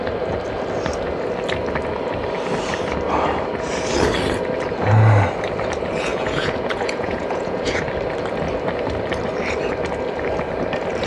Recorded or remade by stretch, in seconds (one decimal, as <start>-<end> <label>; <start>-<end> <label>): 0.0-6.1 recorded; 6.1-7.8 remade; 7.8-11.1 recorded